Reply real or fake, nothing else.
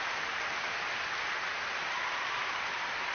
real